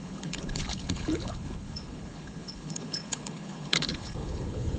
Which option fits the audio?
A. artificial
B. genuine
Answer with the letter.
A